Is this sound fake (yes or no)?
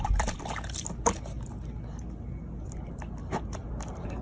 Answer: no